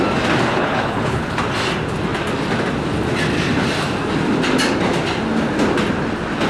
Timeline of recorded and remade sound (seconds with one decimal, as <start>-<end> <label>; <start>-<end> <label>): 0.0-0.5 recorded; 0.5-1.4 remade; 1.4-6.5 recorded